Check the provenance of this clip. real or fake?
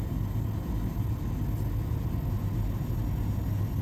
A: real